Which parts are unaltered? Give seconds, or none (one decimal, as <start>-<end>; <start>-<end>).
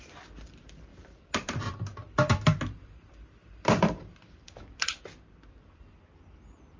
0.0-0.9; 5.0-6.8